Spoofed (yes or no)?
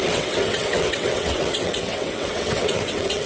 yes